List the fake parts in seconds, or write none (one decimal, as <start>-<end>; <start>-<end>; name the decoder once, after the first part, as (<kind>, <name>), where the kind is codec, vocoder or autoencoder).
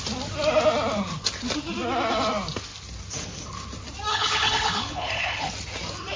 4.1-5.5 (codec, HILCodec)